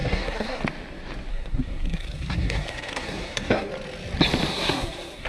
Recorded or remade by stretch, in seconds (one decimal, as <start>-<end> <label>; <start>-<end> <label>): 0.0-0.6 remade; 0.6-1.3 recorded; 1.3-3.7 remade; 3.7-4.5 recorded; 4.5-5.3 remade